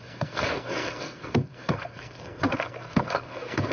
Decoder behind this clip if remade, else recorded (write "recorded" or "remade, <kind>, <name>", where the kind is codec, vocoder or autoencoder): remade, codec, SNAC